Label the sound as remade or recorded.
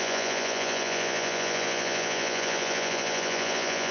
remade